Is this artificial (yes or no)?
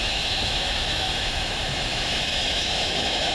yes